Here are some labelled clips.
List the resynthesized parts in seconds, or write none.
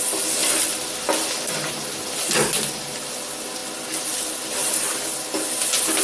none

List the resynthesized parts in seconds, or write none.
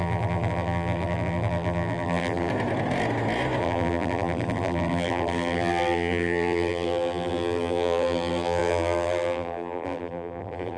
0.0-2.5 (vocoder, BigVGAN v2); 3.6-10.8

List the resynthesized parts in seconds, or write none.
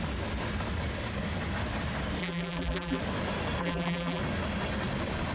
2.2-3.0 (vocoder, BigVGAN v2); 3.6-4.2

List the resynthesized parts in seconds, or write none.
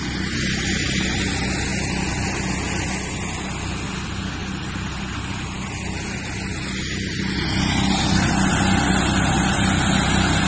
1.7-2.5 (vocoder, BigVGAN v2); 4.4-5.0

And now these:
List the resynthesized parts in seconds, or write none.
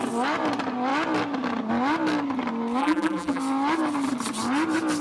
2.8-3.4 (vocoder, BigVGAN v2)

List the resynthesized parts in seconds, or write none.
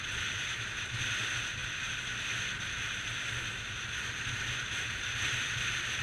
none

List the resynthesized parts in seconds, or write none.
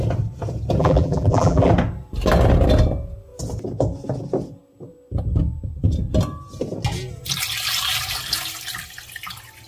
0.8-1.7 (vocoder, BigVGAN v2)